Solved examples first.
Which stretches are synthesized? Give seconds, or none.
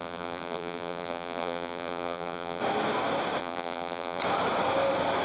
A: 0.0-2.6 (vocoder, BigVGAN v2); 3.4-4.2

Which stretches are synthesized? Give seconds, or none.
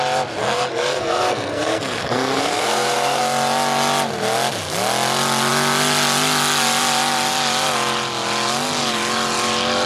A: 0.4-3.2 (codec, SNAC)